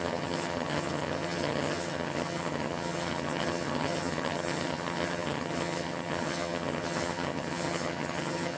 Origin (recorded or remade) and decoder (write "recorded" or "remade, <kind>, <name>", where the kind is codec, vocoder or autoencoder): remade, vocoder, HiFi-GAN